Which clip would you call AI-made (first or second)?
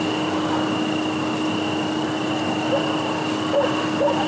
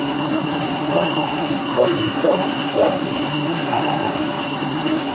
second